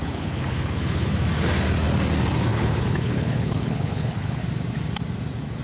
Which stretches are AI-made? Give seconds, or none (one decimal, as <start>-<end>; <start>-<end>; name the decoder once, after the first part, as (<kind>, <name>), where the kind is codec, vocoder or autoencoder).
0.0-1.1 (codec, HILCodec); 2.5-4.4